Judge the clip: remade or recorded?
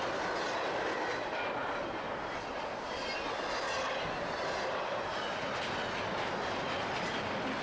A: recorded